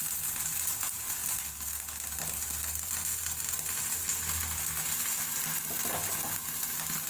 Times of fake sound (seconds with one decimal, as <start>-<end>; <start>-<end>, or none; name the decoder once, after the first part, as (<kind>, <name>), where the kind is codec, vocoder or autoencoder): none

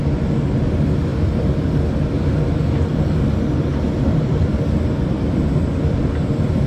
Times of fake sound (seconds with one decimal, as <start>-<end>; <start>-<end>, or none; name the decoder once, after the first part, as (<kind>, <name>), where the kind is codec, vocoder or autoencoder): 1.1-1.8 (vocoder, BigVGAN v2); 3.7-6.1

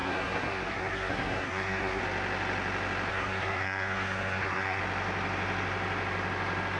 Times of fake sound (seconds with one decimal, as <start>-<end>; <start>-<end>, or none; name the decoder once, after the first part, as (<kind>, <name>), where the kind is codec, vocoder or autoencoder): 0.0-2.0 (codec, SNAC); 3.1-4.8